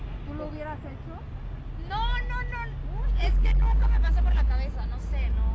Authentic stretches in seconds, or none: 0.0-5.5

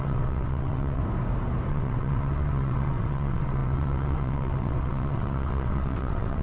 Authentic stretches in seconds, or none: 1.0-1.7

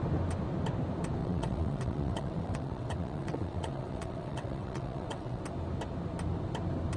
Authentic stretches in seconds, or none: 0.0-1.2; 5.4-7.0